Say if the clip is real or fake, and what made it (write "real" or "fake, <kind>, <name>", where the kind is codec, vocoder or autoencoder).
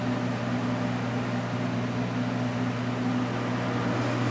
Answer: real